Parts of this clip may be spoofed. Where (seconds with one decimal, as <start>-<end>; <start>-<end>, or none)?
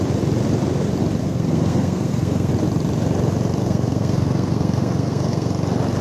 1.2-2.5; 3.6-5.5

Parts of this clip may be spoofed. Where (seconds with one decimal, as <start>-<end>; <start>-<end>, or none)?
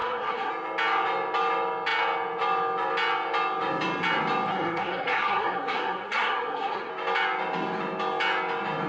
0.0-0.5; 4.5-6.9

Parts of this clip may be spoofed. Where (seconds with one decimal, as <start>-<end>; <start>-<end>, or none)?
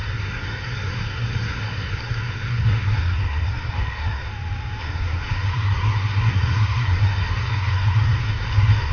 0.0-4.3; 4.8-8.9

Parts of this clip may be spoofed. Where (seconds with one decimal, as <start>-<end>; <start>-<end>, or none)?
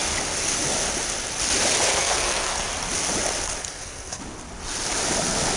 1.9-2.7; 3.6-4.2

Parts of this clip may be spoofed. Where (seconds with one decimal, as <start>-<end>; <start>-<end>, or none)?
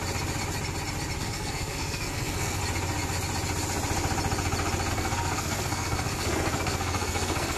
1.2-2.6; 4.9-7.6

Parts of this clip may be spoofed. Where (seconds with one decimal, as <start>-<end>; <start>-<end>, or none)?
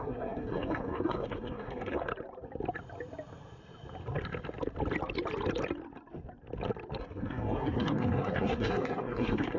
0.0-2.1; 7.0-9.6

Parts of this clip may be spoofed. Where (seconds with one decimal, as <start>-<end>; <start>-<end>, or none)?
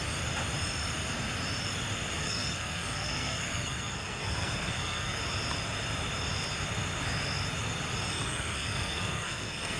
2.1-5.2; 8.1-9.8